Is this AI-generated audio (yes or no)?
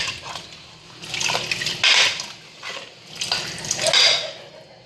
no